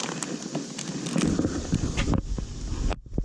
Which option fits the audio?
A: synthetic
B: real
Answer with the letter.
B